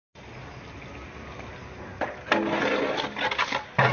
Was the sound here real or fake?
real